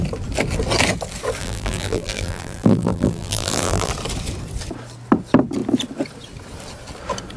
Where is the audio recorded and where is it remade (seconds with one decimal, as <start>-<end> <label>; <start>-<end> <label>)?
0.0-1.4 recorded; 1.4-3.9 remade; 3.9-7.4 recorded